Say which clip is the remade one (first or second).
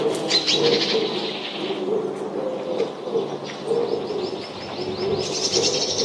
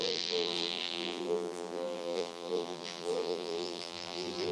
second